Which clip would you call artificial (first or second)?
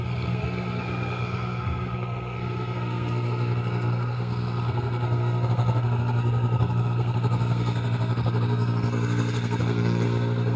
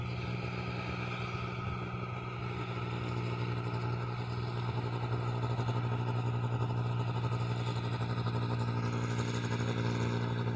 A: first